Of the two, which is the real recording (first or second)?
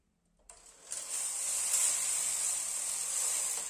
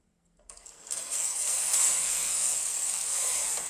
first